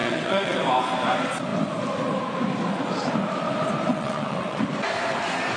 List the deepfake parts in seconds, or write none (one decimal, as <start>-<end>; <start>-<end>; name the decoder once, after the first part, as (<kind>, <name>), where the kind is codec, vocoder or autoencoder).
0.0-0.6 (vocoder, WaveNeXt); 3.9-4.6

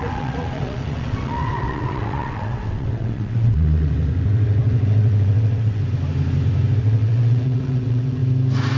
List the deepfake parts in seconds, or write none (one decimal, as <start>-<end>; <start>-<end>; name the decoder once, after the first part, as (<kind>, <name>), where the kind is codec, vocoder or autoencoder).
0.0-5.8 (vocoder, WaveNeXt); 6.8-8.2